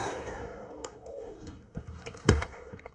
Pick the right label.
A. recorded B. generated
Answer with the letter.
B